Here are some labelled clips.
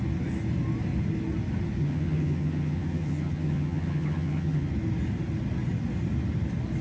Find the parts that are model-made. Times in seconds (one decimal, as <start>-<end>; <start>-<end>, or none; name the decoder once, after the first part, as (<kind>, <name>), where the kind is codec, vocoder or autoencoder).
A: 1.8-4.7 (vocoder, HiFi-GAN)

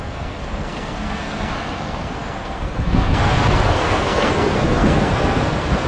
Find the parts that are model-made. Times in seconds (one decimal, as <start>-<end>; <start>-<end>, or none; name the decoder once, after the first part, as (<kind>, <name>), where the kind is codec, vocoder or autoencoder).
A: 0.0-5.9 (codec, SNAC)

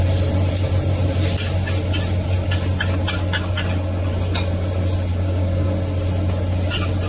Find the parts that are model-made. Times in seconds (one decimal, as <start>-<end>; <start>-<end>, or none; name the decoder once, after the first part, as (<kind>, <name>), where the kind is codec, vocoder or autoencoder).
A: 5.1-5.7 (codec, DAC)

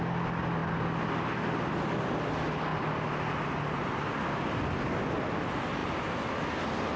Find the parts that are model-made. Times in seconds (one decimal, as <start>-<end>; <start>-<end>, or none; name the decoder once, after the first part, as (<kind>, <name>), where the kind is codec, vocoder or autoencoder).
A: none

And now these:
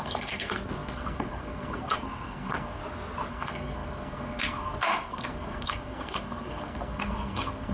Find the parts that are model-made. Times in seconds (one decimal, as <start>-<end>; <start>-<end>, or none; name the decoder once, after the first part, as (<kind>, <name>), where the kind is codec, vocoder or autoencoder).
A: 0.0-2.8 (codec, SNAC); 3.3-7.7